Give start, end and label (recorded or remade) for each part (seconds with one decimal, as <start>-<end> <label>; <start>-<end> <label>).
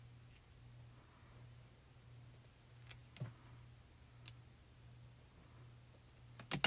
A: 0.0-6.7 recorded